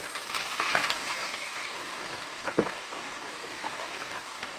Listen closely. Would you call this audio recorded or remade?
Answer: remade